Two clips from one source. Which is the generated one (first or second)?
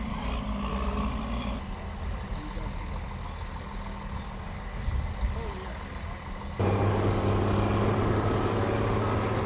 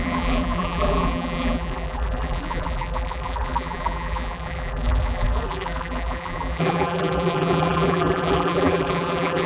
second